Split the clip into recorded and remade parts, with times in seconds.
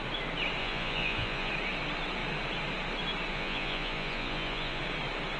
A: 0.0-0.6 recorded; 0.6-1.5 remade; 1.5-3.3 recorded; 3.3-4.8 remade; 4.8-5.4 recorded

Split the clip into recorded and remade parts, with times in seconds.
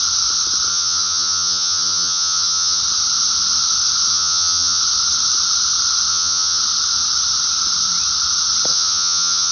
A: 0.0-0.7 recorded; 0.7-2.8 remade; 2.8-4.1 recorded; 4.1-4.8 remade; 4.8-6.1 recorded; 6.1-6.6 remade; 6.6-8.7 recorded; 8.7-9.5 remade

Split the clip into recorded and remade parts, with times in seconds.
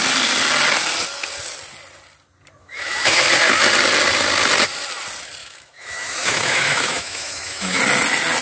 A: 0.0-2.6 recorded; 2.6-3.2 remade; 3.2-5.4 recorded; 5.4-7.8 remade; 7.8-8.4 recorded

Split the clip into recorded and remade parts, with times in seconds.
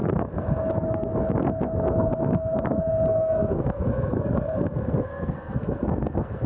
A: 0.0-6.5 remade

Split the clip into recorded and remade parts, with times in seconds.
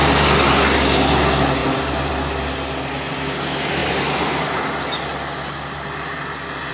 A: 0.0-6.7 recorded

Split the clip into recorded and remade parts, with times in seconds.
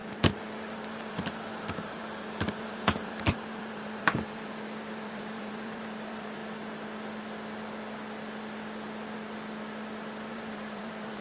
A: 0.0-6.4 remade; 6.4-10.3 recorded; 10.3-11.2 remade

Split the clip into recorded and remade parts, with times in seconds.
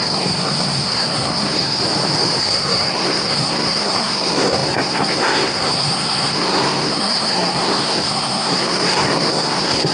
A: 0.0-1.8 remade; 1.8-2.4 recorded; 2.4-9.9 remade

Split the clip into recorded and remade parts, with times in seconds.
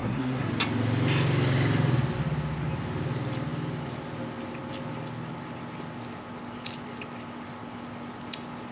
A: 0.0-0.5 remade; 0.5-8.7 recorded